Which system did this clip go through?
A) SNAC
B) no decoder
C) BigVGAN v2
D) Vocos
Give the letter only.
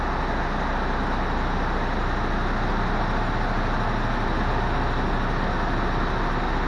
B